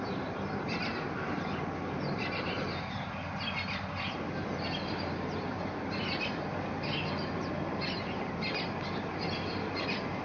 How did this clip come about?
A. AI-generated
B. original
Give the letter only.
B